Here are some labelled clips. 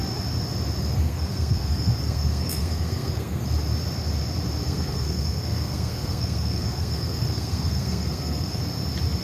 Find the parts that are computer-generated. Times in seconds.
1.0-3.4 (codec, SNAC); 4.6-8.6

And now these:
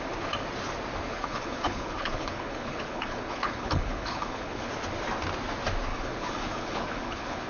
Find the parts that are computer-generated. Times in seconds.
1.1-4.7 (codec, HILCodec); 5.9-7.5

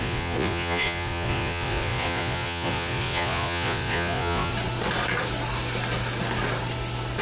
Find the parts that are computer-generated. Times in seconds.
0.0-4.5 (vocoder, Vocos)

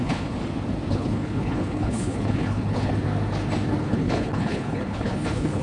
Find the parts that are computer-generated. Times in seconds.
0.0-0.4 (codec, HILCodec); 0.9-2.9; 3.8-5.6